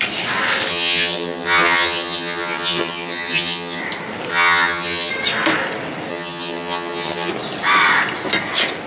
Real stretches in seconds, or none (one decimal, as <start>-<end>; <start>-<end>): 0.0-0.7; 3.8-4.3; 5.1-6.1; 7.3-8.9